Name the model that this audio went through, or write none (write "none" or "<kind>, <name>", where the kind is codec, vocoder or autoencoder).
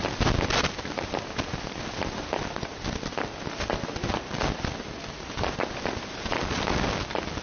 none